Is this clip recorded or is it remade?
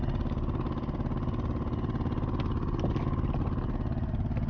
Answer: recorded